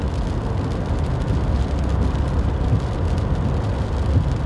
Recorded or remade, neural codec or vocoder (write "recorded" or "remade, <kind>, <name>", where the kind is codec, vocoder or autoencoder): recorded